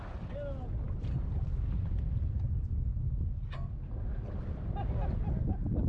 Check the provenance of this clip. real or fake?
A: real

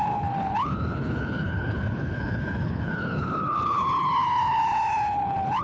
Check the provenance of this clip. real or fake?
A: fake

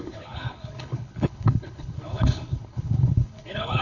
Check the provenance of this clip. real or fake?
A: fake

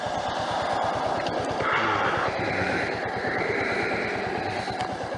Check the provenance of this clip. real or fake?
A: real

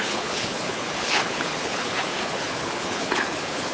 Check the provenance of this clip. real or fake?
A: fake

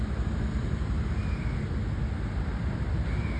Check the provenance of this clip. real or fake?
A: real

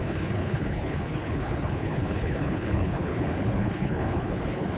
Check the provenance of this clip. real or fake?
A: fake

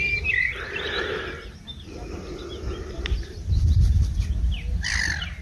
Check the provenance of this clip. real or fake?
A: real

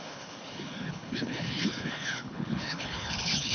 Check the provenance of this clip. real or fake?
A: fake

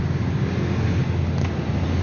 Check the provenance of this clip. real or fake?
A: real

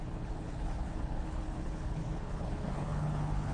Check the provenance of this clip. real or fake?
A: fake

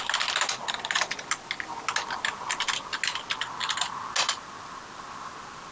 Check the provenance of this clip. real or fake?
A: real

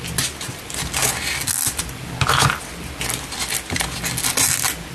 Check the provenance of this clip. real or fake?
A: real